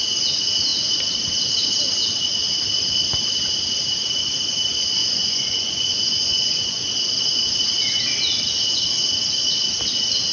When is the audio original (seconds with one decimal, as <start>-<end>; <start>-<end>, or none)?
0.0-5.0; 6.9-10.3